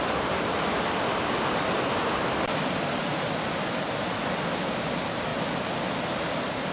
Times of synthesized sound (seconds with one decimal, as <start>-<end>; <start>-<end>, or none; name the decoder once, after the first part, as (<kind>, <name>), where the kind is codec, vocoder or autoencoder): none